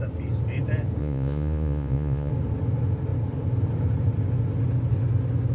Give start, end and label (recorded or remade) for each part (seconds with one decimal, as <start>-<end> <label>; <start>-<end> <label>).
0.0-1.0 recorded; 1.0-2.3 remade; 2.3-5.5 recorded